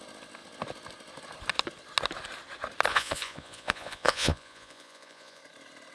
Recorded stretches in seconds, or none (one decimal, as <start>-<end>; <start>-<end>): 0.0-2.9; 5.4-5.9